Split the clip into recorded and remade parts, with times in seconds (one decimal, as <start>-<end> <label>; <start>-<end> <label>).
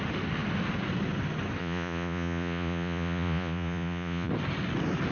0.0-1.6 recorded; 1.6-4.3 remade; 4.3-5.1 recorded